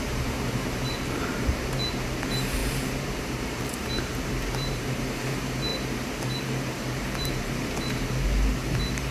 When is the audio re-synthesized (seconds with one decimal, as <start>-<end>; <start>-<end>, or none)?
0.0-9.1